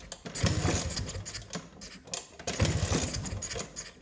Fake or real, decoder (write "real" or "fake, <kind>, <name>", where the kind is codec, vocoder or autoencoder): real